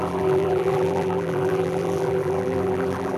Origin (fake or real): fake